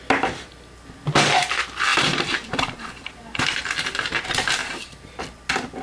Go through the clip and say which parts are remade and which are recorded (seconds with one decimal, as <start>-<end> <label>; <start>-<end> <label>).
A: 0.0-1.9 recorded; 1.9-3.6 remade; 3.6-4.6 recorded; 4.6-5.2 remade; 5.2-5.8 recorded